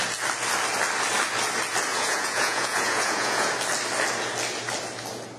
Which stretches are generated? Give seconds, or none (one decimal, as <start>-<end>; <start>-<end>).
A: 1.9-3.5